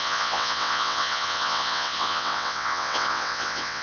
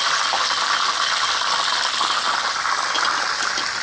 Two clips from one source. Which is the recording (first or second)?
second